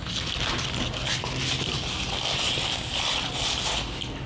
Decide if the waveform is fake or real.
real